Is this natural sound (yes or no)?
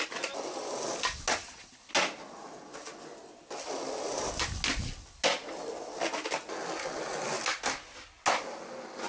yes